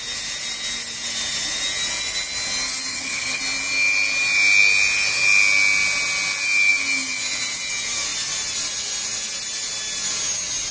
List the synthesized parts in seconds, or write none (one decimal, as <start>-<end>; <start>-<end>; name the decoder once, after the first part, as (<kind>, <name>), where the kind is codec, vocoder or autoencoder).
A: 2.9-3.4 (vocoder, HiFi-GAN)